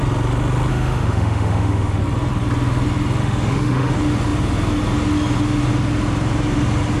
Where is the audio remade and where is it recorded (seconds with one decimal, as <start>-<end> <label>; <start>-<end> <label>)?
0.0-0.7 recorded; 0.7-2.0 remade; 2.0-3.2 recorded; 3.2-3.9 remade; 3.9-7.0 recorded